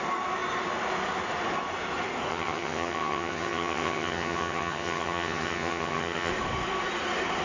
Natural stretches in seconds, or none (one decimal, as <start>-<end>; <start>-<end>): 0.0-2.3; 6.3-7.4